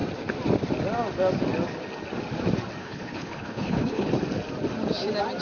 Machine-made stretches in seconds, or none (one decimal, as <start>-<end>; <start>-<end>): 2.8-4.1